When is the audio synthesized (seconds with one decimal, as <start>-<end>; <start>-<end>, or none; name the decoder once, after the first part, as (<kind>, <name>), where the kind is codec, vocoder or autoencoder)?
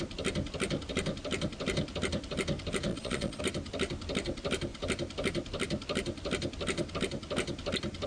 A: 2.9-3.4 (vocoder, Vocos)